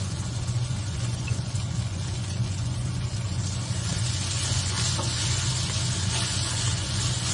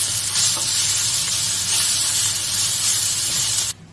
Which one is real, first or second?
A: second